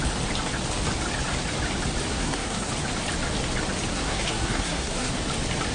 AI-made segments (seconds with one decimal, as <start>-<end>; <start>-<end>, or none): 2.1-2.7; 3.9-5.1